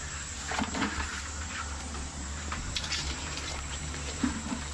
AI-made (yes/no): yes